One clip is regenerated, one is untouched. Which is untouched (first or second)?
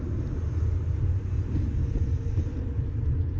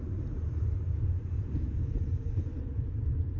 first